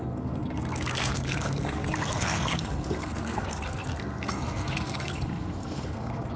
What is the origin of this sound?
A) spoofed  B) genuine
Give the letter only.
A